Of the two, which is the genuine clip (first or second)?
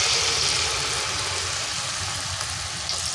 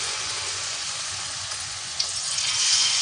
first